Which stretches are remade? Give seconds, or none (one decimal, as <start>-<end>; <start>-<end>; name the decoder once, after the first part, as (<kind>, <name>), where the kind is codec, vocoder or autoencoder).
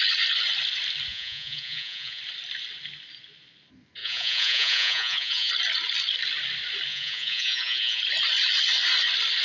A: 1.1-2.2 (vocoder, Vocos); 4.0-5.5; 6.9-8.0